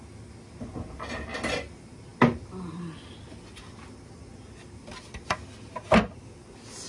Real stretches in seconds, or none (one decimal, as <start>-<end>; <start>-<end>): 0.0-6.9